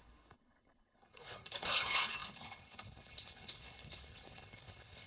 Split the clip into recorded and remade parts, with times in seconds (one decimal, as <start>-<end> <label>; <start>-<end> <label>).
0.0-5.1 remade